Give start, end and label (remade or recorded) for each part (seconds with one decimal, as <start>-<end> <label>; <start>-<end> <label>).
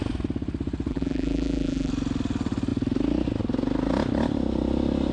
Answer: 0.0-0.9 recorded; 0.9-1.9 remade; 1.9-5.1 recorded